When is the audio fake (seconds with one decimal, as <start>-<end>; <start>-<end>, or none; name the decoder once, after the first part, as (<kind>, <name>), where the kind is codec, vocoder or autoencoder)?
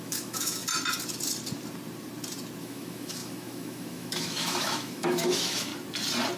0.0-0.6 (autoencoder, DAC-VAE); 2.6-5.7